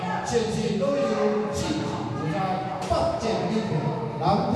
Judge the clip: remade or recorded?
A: recorded